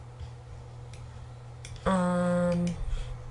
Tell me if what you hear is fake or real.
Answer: real